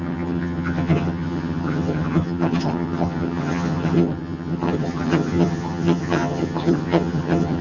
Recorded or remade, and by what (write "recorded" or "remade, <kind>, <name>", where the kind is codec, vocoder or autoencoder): remade, vocoder, HiFi-GAN